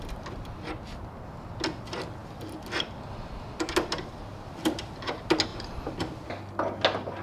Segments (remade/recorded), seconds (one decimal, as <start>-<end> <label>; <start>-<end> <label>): 0.0-7.2 recorded